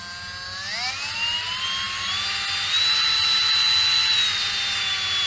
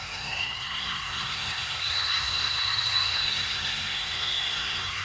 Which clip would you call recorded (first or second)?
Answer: first